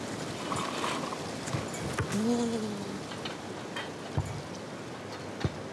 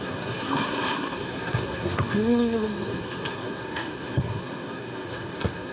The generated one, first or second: second